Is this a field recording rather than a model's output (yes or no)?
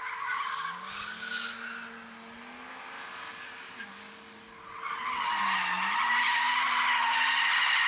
yes